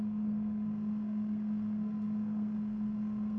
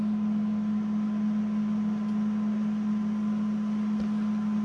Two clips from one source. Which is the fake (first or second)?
first